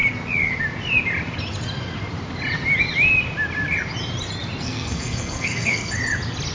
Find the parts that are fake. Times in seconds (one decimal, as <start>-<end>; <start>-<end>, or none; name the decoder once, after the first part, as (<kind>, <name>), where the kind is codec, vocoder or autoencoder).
4.6-5.9 (codec, SNAC)

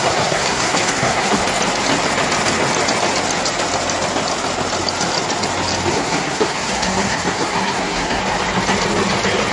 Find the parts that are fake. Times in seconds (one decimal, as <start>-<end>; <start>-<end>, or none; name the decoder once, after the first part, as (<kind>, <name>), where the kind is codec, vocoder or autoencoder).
0.0-1.4 (codec, SNAC); 5.9-8.2

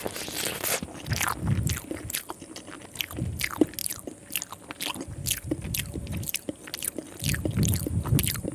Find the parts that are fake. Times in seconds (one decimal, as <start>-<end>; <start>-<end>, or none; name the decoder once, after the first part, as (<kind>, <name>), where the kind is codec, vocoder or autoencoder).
none

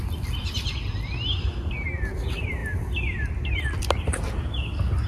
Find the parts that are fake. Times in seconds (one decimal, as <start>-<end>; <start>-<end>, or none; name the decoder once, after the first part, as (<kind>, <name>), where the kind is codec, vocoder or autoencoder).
none

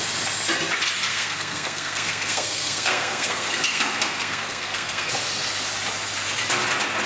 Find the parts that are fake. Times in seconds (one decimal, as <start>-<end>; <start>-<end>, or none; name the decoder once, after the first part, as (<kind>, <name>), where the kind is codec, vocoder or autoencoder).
1.1-5.1 (codec, SNAC)

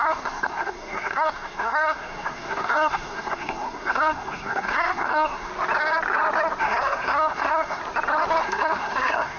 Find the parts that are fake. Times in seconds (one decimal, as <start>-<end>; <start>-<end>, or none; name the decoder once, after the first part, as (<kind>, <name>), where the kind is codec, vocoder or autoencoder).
0.0-5.5 (codec, SNAC); 6.6-7.8; 8.4-9.4

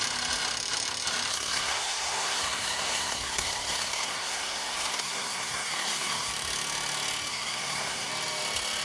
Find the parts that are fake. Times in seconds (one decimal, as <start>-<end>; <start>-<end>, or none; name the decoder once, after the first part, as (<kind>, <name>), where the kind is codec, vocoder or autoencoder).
1.3-6.3 (codec, SNAC); 7.3-8.1

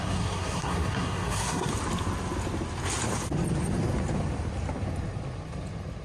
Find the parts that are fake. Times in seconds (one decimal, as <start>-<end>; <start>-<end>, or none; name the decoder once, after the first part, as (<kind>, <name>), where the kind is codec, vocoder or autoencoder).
0.0-1.7 (codec, SNAC)